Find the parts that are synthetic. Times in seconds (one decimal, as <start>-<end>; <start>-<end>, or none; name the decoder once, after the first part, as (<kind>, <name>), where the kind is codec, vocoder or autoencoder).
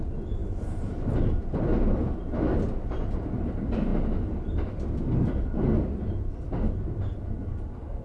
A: none